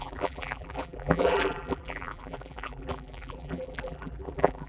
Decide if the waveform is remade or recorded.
remade